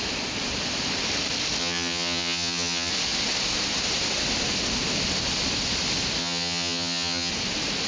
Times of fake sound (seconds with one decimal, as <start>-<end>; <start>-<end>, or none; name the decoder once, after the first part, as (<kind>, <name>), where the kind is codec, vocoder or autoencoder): 1.6-2.9 (vocoder, HiFi-GAN); 6.2-7.3